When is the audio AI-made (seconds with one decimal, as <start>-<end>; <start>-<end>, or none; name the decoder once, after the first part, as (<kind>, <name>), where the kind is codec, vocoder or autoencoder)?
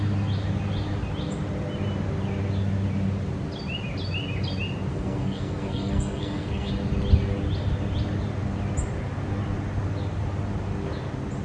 4.9-6.7 (codec, SNAC)